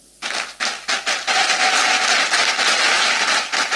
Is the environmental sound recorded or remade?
recorded